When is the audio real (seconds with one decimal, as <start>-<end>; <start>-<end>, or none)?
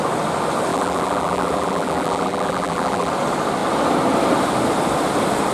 0.0-0.7; 3.1-5.5